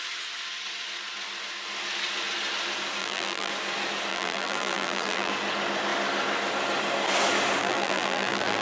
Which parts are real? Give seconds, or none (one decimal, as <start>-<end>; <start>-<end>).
0.0-3.0; 3.5-4.1; 5.3-7.6